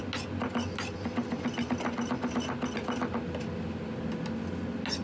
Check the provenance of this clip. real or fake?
real